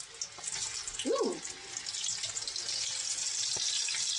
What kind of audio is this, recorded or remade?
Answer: recorded